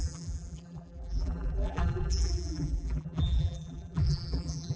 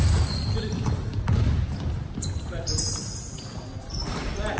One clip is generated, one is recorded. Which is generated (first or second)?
first